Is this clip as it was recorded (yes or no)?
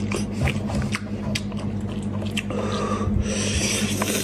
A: yes